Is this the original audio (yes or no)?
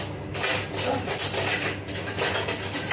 yes